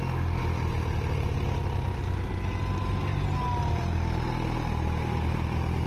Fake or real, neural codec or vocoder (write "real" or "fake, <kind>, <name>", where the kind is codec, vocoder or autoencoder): real